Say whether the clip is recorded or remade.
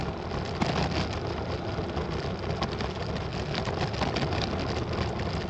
recorded